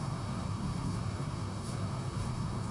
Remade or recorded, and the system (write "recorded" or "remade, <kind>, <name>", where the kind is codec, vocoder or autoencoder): remade, codec, SNAC